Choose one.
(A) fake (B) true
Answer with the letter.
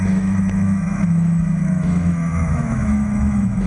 A